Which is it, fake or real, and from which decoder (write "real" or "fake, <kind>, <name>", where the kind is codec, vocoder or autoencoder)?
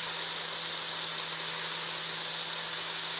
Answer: real